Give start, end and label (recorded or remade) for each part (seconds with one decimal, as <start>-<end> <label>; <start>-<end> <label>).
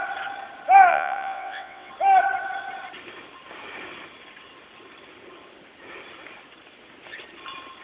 0.0-0.9 recorded; 0.9-1.9 remade; 1.9-7.8 recorded